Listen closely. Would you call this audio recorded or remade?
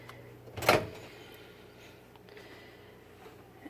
recorded